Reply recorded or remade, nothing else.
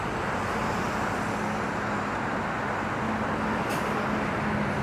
recorded